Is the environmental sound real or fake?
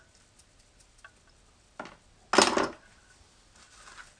real